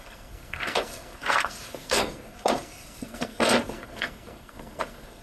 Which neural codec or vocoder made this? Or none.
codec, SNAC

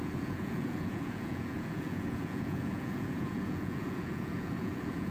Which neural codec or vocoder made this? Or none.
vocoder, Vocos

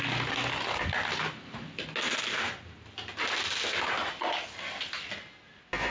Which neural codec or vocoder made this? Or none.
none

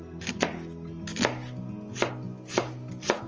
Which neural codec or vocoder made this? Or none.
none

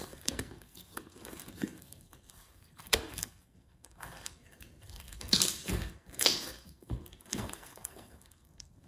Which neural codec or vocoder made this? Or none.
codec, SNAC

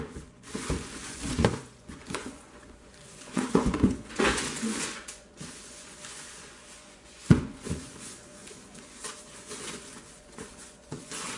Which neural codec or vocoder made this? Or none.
vocoder, Vocos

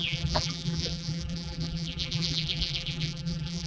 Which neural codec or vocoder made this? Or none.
vocoder, BigVGAN v2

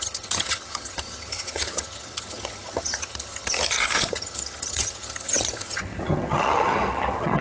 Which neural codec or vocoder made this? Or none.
vocoder, HiFi-GAN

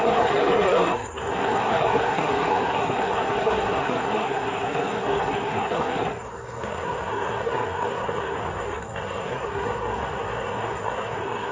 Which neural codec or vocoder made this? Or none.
codec, SNAC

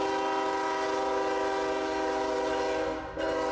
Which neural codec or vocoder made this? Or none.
none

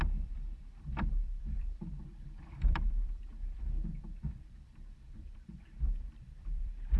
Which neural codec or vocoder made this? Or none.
vocoder, BigVGAN v2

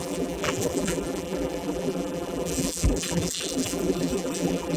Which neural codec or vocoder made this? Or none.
vocoder, BigVGAN v2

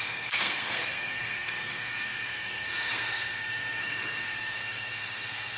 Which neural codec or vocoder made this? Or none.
codec, SNAC